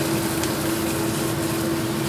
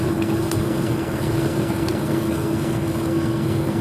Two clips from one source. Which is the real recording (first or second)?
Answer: first